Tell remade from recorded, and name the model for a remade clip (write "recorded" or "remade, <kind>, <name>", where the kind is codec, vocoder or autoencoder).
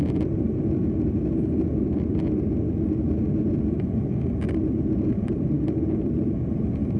recorded